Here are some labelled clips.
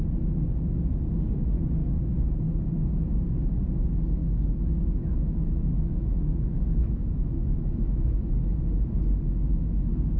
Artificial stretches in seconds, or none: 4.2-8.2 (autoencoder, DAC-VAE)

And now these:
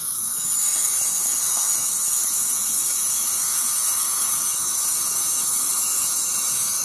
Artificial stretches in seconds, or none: 0.0-6.8 (autoencoder, DAC-VAE)

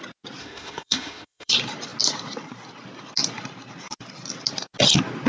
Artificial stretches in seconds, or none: 0.4-1.5 (autoencoder, DAC-VAE)

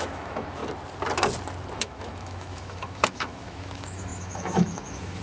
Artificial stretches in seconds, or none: 0.0-0.6 (autoencoder, DAC-VAE); 1.8-5.2